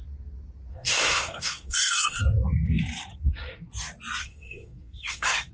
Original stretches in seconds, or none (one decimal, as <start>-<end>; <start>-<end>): 0.0-0.7; 2.2-3.1; 3.7-4.2